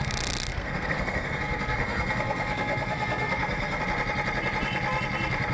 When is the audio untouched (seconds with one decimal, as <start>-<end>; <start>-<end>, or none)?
0.0-0.5; 3.8-5.5